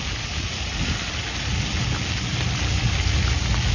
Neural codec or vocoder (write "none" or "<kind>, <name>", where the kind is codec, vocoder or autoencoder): none